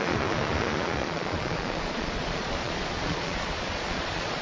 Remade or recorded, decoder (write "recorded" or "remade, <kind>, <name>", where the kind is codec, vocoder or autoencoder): remade, vocoder, Vocos